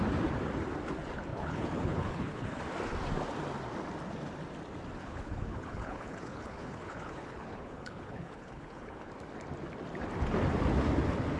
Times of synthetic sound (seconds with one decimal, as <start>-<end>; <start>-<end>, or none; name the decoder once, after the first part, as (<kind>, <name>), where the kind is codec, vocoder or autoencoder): 1.3-2.6 (codec, HILCodec); 5.0-9.1